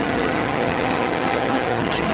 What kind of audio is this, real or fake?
fake